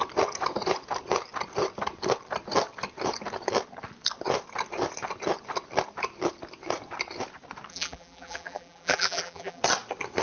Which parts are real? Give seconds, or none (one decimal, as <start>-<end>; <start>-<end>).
0.0-7.7; 9.6-10.2